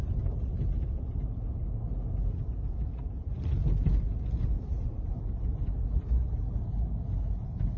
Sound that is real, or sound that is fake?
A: real